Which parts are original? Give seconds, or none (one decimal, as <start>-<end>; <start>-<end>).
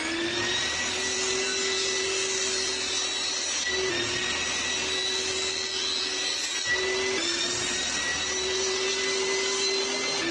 0.0-10.3